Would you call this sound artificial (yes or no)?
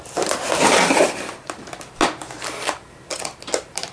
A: no